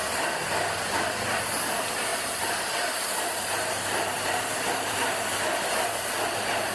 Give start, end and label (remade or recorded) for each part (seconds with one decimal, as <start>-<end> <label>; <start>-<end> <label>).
0.0-2.1 recorded; 2.1-6.1 remade; 6.1-6.7 recorded